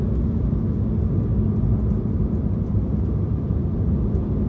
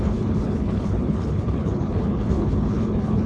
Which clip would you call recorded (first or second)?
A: first